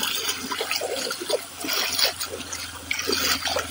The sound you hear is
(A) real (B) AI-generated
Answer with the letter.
A